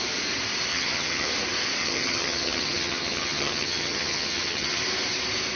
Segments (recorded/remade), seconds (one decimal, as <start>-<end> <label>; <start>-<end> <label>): 0.0-0.7 recorded; 0.7-1.3 remade; 1.3-1.8 recorded; 1.8-4.8 remade; 4.8-5.6 recorded